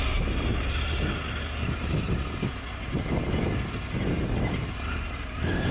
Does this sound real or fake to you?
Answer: real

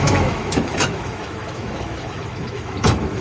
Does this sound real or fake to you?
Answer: fake